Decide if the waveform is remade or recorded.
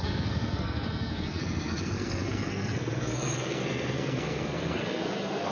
remade